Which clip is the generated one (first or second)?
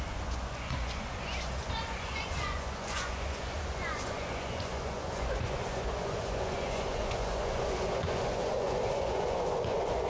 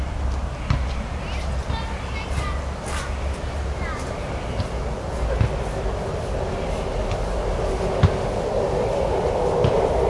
first